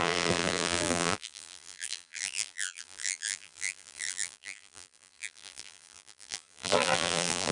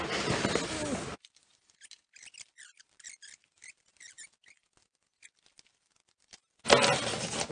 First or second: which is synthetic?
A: first